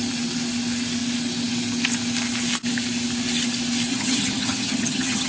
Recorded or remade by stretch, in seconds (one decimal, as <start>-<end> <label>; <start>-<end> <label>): 0.0-3.9 recorded; 3.9-5.3 remade